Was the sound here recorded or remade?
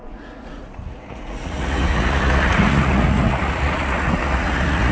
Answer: remade